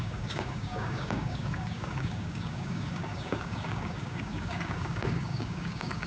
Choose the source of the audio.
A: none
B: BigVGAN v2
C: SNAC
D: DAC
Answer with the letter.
D